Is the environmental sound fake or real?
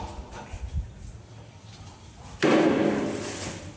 real